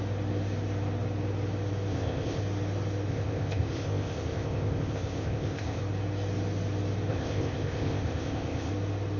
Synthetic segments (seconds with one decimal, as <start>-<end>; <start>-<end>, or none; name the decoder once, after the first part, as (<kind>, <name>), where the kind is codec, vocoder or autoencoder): 1.9-2.4 (codec, ZipCodec); 3.1-5.8; 7.1-8.7